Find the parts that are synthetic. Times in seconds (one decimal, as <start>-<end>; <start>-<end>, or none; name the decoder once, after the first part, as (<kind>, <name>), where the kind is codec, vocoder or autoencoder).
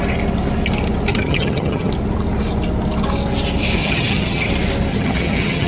1.1-1.9 (vocoder, HiFi-GAN); 3.8-4.5; 4.9-5.7